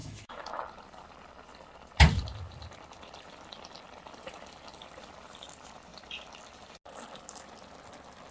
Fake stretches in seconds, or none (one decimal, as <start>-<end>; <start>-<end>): 0.0-0.6